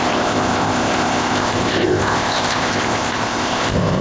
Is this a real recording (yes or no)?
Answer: no